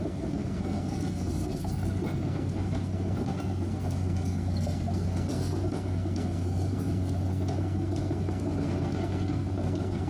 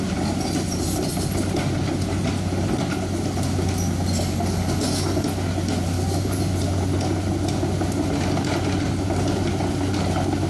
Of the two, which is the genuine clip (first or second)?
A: second